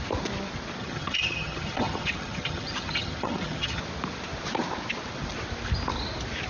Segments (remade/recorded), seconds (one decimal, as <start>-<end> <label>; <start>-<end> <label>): 0.0-0.8 recorded; 0.8-3.8 remade; 3.8-6.5 recorded